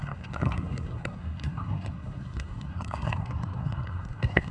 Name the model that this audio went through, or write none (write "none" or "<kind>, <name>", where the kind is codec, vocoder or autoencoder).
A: codec, SNAC